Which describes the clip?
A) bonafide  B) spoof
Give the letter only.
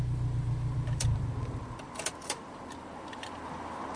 B